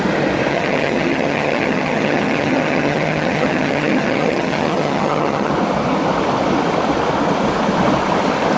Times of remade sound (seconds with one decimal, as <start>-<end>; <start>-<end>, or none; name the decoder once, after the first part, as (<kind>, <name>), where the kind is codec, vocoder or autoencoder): 0.5-5.5 (vocoder, HiFi-GAN)